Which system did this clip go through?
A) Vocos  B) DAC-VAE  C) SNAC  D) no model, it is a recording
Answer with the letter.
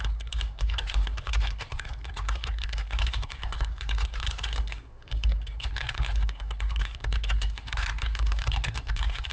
C